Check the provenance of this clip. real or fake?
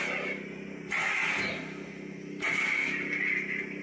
real